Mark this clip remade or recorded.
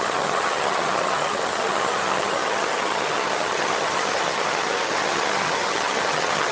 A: remade